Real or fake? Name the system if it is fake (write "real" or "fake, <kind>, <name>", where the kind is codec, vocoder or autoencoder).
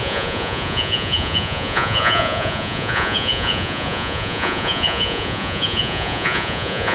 fake, vocoder, Vocos